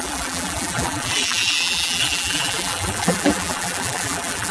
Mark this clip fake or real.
fake